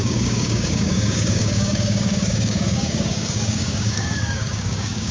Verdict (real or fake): fake